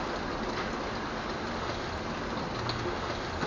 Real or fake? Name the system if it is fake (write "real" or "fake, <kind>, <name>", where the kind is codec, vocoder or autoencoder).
real